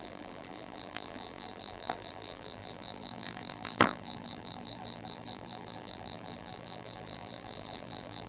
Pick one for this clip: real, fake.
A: fake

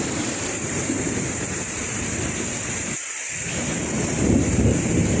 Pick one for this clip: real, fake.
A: fake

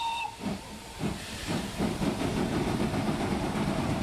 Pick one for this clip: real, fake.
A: fake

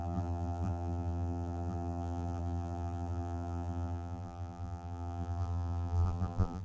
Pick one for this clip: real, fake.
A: fake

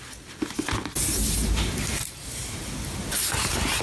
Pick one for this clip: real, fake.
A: real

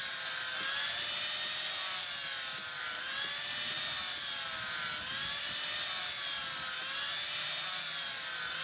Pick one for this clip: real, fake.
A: real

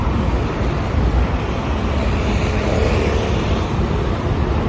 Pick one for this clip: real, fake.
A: real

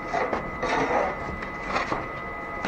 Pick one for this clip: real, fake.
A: real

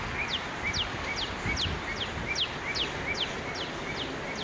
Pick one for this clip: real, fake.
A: real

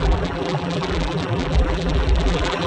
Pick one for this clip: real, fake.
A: fake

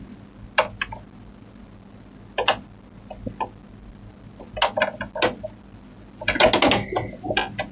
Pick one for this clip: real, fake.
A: real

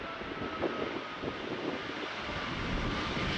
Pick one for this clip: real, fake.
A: real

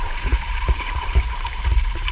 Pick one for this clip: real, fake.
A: fake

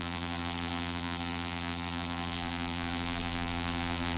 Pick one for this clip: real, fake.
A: fake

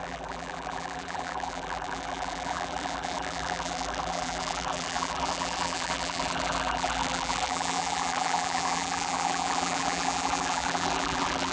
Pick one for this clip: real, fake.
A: fake